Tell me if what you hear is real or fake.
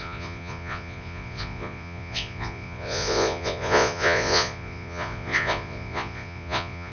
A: fake